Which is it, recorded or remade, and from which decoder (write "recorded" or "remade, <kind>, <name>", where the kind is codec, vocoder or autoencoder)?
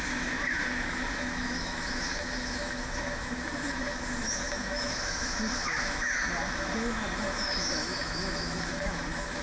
remade, autoencoder, DAC-VAE